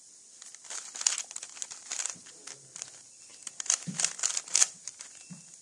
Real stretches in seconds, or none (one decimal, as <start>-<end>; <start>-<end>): 3.3-4.2